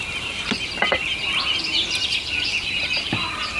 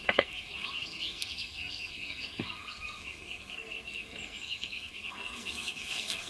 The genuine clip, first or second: first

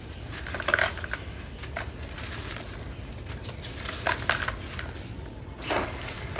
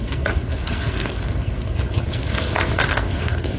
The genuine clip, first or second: first